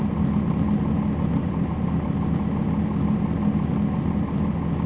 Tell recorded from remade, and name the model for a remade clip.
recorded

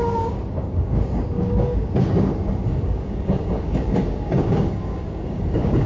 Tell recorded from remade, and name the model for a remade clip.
remade, codec, DAC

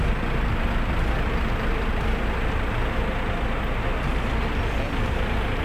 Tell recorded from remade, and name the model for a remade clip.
recorded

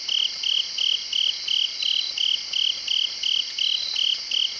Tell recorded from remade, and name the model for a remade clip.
recorded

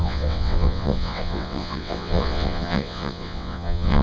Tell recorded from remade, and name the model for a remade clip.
remade, vocoder, WaveNeXt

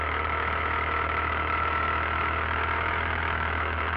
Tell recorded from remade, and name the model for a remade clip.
remade, autoencoder, DAC-VAE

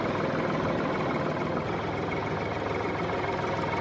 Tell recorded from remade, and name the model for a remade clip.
recorded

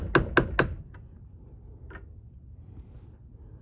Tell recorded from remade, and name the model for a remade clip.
recorded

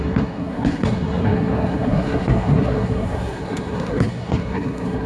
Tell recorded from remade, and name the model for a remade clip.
remade, codec, SNAC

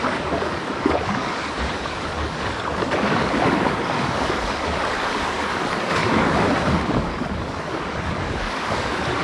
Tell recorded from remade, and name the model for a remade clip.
remade, codec, DAC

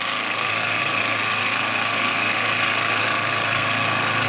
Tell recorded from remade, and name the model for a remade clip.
remade, codec, SNAC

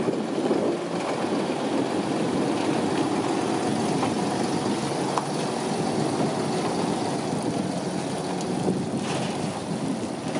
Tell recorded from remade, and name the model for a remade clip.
recorded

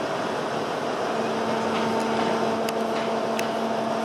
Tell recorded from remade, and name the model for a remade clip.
recorded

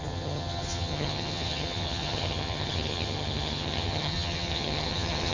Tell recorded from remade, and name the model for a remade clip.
remade, vocoder, HiFi-GAN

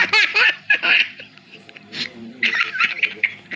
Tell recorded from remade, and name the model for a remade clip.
remade, vocoder, BigVGAN v2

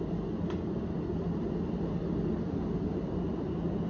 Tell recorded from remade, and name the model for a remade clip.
recorded